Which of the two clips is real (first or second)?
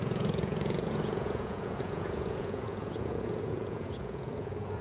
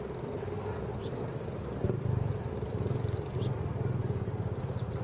second